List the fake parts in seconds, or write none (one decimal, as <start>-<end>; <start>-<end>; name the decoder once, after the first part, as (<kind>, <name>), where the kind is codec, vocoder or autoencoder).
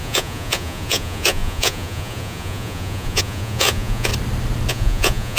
0.0-4.1 (vocoder, Vocos); 4.7-5.4